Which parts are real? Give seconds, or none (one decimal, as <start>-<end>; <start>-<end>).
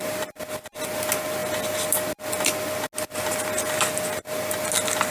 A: 0.0-5.1